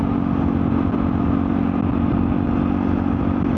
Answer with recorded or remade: recorded